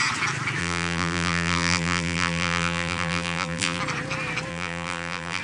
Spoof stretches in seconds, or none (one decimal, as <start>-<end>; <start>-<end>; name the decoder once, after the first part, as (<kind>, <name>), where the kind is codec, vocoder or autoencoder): 0.6-3.8 (vocoder, BigVGAN v2); 4.5-5.4